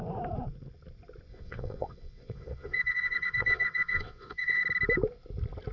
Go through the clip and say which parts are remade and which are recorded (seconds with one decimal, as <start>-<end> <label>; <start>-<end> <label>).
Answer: 0.0-1.3 recorded; 1.3-4.6 remade; 4.6-5.7 recorded